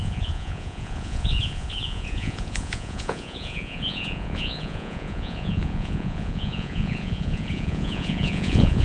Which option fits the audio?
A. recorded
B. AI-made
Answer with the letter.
B